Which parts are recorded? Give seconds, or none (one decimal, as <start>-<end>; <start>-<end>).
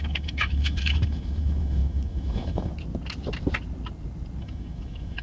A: 2.7-4.4